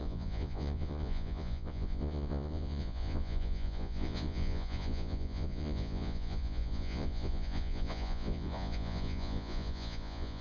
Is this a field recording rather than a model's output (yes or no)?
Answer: no